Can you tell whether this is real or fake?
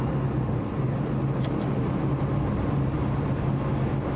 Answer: real